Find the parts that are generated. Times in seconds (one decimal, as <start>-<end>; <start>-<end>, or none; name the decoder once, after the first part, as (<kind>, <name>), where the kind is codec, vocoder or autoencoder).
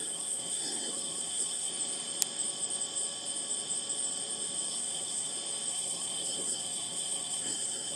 0.0-1.7 (codec, SNAC); 4.7-5.3; 5.7-8.0